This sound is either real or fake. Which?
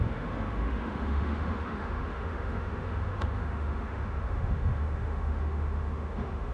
fake